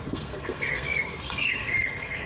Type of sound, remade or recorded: remade